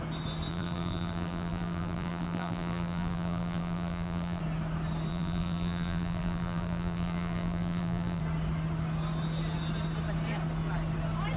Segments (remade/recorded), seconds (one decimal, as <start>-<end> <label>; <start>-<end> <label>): 0.0-0.5 recorded; 0.5-4.4 remade; 4.4-5.1 recorded; 5.1-8.2 remade; 8.2-11.4 recorded